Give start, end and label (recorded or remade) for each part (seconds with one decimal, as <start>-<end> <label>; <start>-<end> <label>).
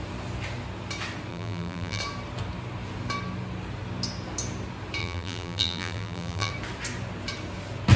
0.0-1.3 recorded; 1.3-2.0 remade; 2.0-5.0 recorded; 5.0-6.5 remade; 6.5-8.0 recorded